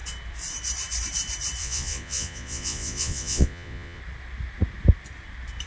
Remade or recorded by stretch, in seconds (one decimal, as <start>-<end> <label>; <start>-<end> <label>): 0.0-1.6 recorded; 1.6-4.0 remade; 4.0-5.7 recorded